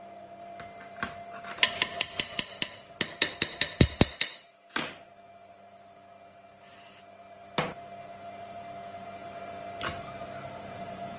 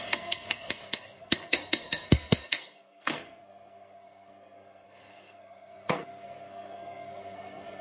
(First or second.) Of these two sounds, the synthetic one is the second